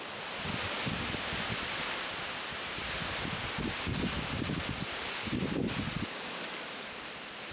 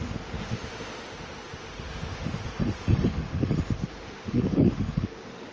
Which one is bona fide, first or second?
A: first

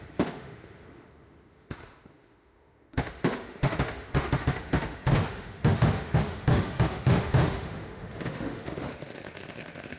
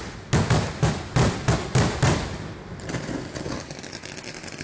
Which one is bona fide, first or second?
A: second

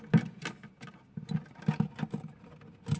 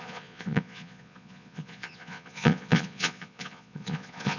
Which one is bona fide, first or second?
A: first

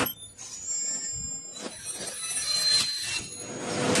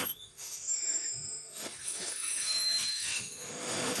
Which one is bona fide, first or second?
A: first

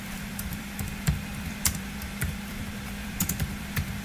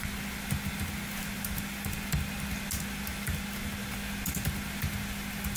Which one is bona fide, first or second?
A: second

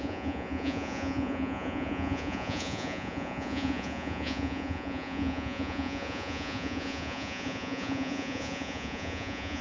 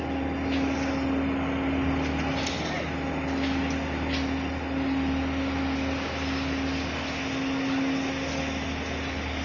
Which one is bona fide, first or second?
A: second